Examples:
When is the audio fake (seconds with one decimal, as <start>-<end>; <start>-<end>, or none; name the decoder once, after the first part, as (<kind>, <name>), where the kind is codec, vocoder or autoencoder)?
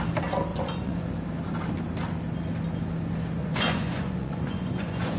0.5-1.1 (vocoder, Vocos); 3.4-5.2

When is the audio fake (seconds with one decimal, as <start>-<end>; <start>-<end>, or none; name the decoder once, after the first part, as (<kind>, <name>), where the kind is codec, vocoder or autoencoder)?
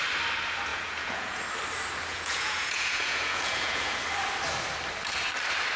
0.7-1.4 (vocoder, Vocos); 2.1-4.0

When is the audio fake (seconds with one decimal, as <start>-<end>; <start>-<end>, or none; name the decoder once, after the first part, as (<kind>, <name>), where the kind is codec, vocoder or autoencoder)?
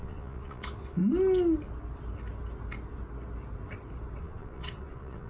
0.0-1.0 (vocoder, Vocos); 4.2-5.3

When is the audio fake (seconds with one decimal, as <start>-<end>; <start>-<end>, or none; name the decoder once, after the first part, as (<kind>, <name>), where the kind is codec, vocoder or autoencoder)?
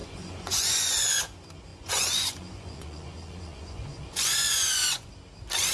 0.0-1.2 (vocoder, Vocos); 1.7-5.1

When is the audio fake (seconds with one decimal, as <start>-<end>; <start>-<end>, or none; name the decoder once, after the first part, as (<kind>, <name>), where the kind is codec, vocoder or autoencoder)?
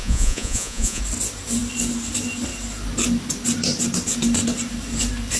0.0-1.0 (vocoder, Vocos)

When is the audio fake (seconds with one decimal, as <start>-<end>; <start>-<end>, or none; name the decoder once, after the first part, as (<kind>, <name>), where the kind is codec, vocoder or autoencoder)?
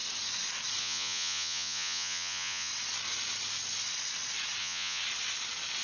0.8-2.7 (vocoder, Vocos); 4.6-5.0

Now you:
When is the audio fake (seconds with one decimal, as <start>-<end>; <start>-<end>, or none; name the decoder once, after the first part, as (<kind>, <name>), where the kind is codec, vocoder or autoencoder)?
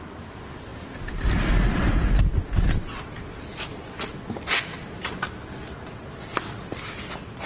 none